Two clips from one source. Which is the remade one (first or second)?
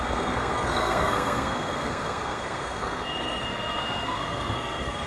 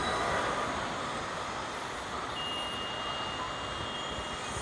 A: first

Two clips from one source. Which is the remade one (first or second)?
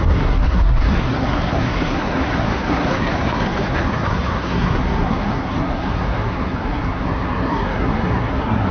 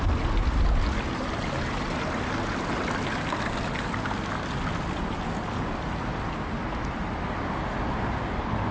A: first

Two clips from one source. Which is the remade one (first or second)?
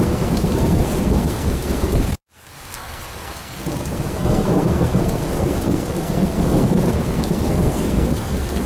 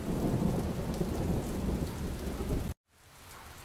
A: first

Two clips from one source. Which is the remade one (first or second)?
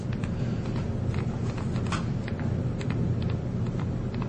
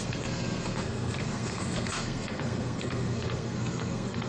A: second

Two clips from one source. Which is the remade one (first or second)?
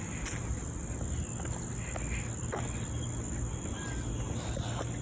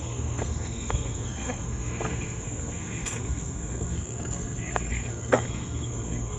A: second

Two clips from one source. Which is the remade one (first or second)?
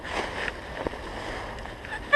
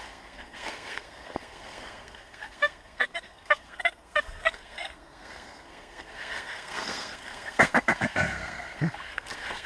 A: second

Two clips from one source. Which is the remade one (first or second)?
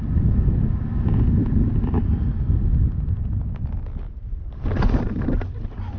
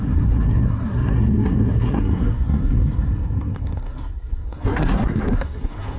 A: second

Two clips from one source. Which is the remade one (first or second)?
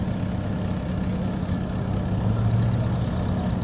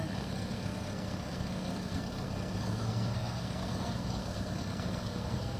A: second